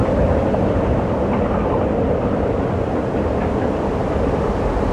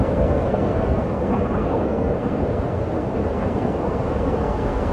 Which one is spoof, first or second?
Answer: second